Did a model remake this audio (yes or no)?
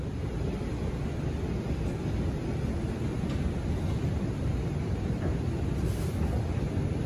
no